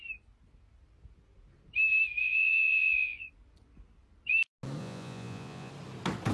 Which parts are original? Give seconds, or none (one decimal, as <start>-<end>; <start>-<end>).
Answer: 0.0-2.2; 3.3-4.8; 5.7-6.3